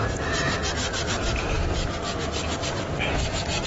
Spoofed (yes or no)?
no